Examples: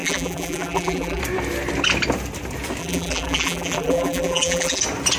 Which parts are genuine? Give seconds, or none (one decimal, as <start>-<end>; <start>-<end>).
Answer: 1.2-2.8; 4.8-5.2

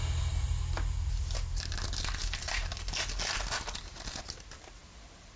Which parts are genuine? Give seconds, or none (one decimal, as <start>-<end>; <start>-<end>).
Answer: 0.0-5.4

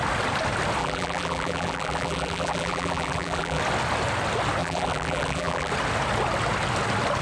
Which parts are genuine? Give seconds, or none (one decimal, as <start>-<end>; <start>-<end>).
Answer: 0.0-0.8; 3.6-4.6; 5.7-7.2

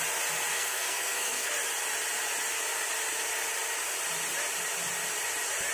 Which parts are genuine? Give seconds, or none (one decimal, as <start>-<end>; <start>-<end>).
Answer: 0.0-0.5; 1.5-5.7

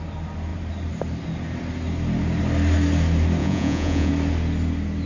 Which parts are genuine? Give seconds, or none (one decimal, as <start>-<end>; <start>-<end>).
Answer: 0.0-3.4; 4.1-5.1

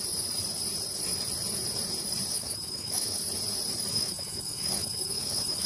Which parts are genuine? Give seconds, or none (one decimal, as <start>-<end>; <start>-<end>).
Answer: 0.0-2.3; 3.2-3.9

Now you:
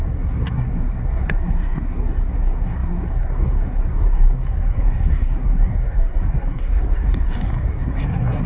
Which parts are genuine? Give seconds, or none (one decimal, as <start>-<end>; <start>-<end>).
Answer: none

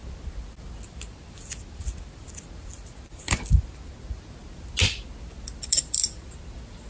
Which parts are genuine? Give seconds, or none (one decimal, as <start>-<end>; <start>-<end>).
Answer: 0.0-6.9